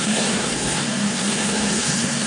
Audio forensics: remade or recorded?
remade